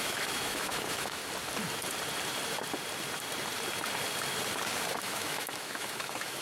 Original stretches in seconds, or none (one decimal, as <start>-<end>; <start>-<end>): 1.2-5.0